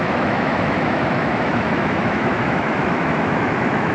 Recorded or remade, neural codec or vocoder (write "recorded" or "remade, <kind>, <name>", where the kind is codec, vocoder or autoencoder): remade, autoencoder, DAC-VAE